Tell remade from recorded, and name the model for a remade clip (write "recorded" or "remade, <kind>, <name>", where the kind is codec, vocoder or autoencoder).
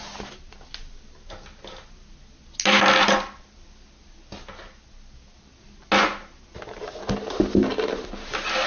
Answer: recorded